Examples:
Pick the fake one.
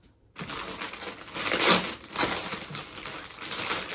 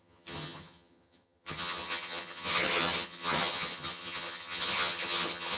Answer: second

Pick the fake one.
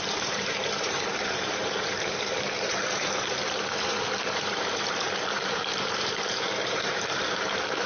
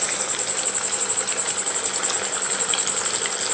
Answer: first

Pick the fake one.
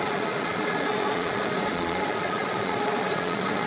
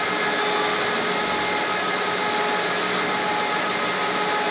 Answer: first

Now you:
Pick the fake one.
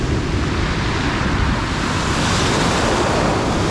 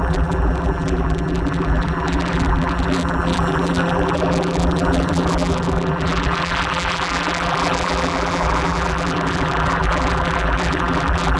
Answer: second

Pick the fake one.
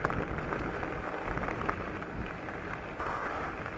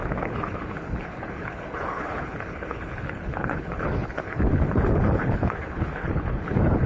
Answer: second